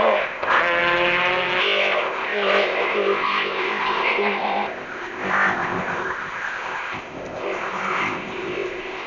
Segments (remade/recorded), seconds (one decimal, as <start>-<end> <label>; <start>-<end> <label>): 0.0-0.6 remade; 0.6-1.6 recorded; 1.6-9.1 remade